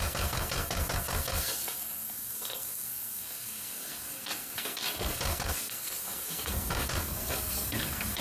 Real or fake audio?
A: fake